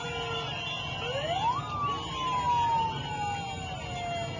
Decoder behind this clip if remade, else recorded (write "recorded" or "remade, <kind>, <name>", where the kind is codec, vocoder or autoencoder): recorded